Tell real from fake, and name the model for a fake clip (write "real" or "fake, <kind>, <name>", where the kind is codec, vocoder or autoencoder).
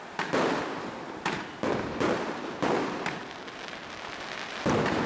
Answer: real